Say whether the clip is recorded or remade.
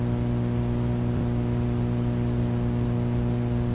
recorded